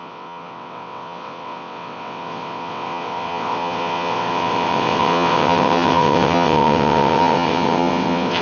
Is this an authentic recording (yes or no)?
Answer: no